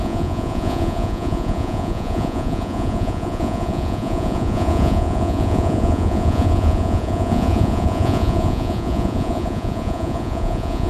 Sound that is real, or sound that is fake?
fake